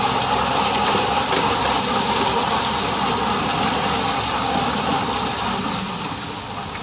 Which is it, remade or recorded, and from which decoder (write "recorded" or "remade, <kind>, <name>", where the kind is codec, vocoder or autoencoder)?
recorded